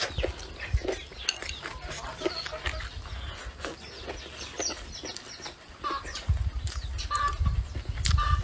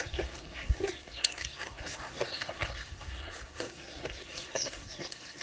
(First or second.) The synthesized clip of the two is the second